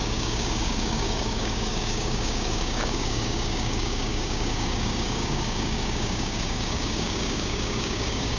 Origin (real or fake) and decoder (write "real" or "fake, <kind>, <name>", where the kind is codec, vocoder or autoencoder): fake, codec, DAC